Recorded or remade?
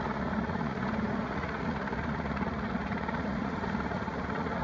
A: remade